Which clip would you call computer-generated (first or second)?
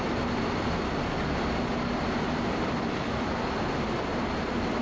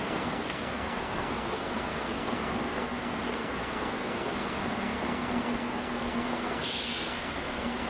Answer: second